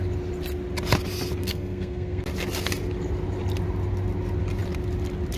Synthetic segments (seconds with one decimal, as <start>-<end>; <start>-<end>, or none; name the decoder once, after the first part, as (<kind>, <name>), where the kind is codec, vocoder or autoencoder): 1.4-2.2 (codec, SNAC)